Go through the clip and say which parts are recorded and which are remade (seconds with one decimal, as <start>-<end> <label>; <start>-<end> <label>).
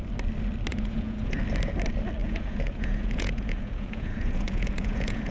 0.0-0.7 recorded; 0.7-1.4 remade; 1.4-2.2 recorded; 2.2-5.3 remade